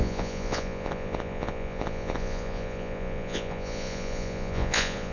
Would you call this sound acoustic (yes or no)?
no